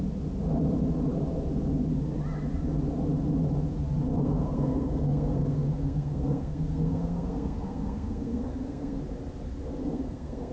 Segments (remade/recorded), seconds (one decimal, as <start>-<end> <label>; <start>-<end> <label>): 0.0-4.1 recorded; 4.1-9.0 remade; 9.0-9.8 recorded; 9.8-10.5 remade